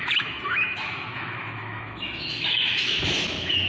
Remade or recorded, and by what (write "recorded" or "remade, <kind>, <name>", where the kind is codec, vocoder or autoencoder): remade, autoencoder, DAC-VAE